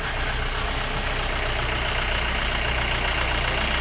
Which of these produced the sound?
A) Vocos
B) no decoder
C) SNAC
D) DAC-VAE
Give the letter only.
B